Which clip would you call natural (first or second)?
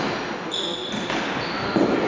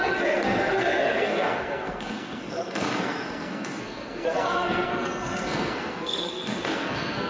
first